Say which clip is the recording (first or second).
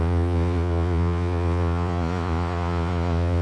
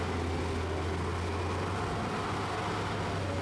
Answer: second